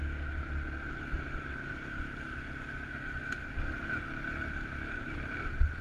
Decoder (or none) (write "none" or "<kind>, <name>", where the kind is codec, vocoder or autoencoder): none